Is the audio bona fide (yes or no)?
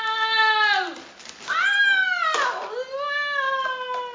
yes